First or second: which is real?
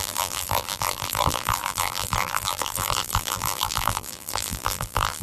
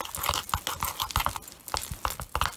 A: second